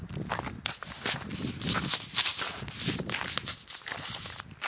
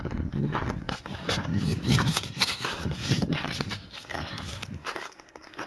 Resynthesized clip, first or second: second